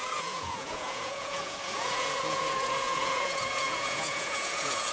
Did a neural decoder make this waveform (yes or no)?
yes